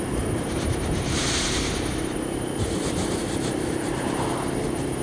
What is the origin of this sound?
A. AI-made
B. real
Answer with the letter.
A